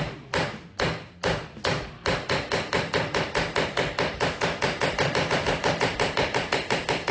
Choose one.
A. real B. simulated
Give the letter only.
A